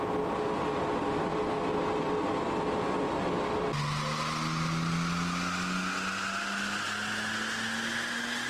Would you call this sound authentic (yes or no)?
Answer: yes